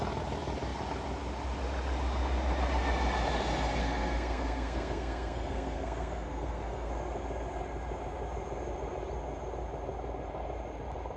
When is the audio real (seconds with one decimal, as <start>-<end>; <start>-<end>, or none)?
0.0-3.8; 6.9-11.2